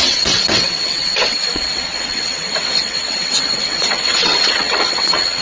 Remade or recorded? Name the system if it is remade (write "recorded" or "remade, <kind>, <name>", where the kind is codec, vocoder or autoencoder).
remade, vocoder, WaveNeXt